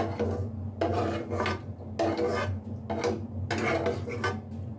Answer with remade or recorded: recorded